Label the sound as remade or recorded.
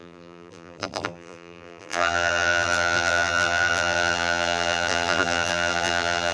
remade